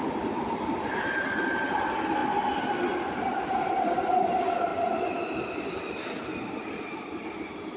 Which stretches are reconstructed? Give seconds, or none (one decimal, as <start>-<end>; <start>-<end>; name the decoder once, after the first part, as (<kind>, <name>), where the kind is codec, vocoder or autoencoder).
0.0-2.2 (vocoder, BigVGAN v2); 3.0-4.7; 5.5-7.8